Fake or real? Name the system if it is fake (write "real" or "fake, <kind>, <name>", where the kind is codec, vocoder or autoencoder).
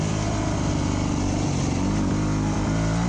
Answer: real